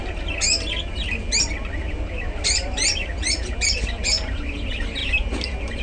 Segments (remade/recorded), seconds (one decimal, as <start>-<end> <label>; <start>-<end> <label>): 0.0-5.8 recorded